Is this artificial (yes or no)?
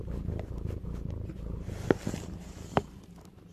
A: no